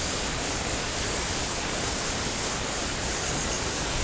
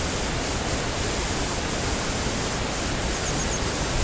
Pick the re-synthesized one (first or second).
first